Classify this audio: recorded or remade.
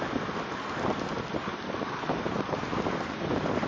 recorded